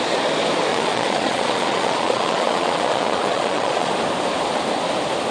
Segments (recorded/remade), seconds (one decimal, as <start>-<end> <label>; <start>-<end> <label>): 0.0-0.7 recorded; 0.7-3.9 remade; 3.9-5.3 recorded